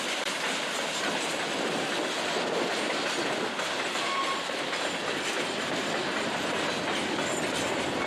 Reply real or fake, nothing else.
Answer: real